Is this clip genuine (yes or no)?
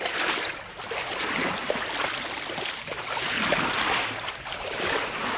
yes